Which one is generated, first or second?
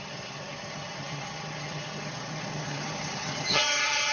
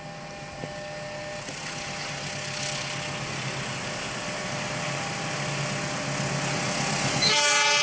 first